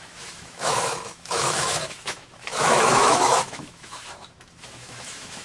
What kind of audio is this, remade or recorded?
remade